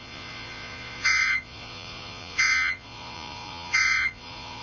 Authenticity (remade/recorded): remade